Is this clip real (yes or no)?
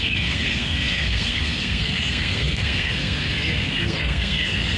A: no